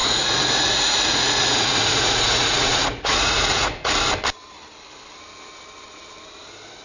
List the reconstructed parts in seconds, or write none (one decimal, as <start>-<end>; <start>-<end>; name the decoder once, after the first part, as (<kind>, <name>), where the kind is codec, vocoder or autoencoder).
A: 0.0-3.9 (vocoder, Vocos)